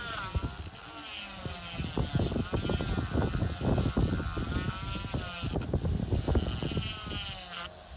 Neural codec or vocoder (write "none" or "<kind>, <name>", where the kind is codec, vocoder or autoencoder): none